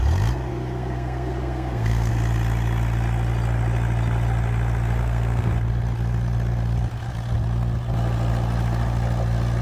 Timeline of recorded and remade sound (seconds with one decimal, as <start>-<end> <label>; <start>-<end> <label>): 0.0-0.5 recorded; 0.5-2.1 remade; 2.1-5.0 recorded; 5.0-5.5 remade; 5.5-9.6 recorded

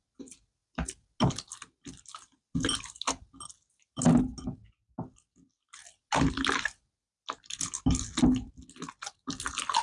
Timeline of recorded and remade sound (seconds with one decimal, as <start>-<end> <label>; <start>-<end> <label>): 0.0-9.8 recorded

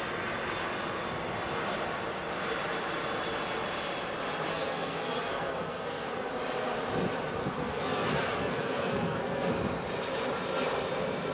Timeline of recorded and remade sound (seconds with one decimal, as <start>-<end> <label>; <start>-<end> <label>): 0.0-4.5 recorded; 4.5-6.3 remade; 6.3-7.4 recorded; 7.4-9.5 remade; 9.5-11.3 recorded